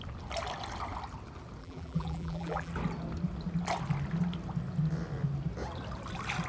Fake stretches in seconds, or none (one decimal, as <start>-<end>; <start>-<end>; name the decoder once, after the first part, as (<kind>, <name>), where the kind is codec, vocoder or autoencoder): 1.6-2.7 (vocoder, BigVGAN v2)